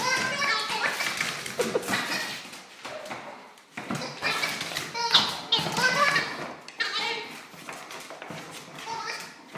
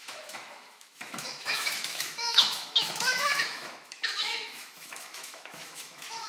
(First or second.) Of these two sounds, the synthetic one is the second